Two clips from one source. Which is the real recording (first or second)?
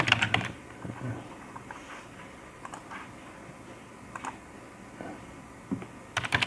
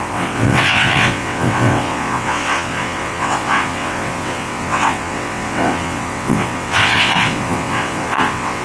first